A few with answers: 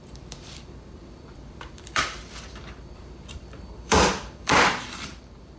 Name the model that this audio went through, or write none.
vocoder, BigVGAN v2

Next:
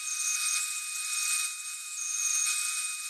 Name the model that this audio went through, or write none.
vocoder, BigVGAN v2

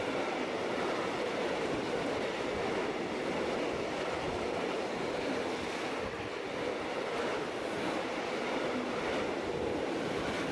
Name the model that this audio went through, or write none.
vocoder, BigVGAN v2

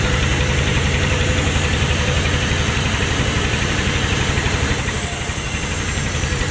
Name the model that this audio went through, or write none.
vocoder, BigVGAN v2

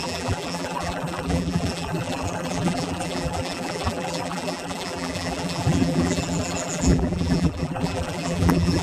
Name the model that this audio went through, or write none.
vocoder, BigVGAN v2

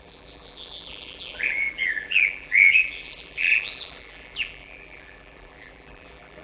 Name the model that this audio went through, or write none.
vocoder, BigVGAN v2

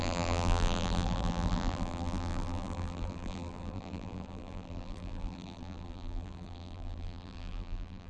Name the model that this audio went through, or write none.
vocoder, BigVGAN v2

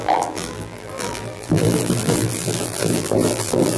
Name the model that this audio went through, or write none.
vocoder, BigVGAN v2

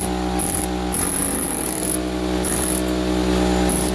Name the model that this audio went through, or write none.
none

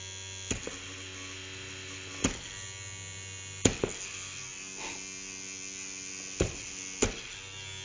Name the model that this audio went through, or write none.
none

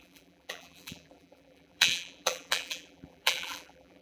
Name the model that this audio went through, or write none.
vocoder, BigVGAN v2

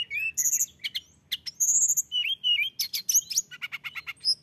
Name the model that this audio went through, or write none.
none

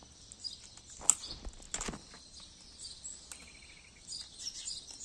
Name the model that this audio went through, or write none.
none